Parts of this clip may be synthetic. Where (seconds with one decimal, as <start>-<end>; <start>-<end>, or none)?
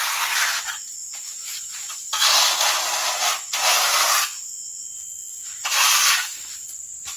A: 1.0-1.9